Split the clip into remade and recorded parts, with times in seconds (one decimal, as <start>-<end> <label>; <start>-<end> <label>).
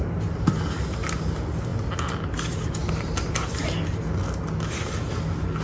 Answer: 0.0-5.6 recorded